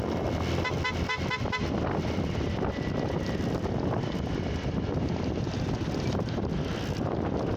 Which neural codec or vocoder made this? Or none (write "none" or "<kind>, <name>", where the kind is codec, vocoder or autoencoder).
none